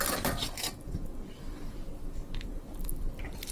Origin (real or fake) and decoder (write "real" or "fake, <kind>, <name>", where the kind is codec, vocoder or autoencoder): fake, vocoder, BigVGAN v2